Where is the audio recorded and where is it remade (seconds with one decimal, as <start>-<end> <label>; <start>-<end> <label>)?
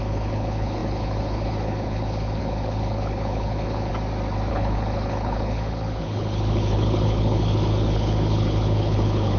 0.0-3.9 remade; 3.9-4.5 recorded; 4.5-9.4 remade